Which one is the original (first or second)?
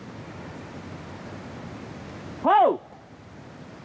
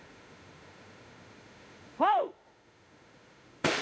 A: first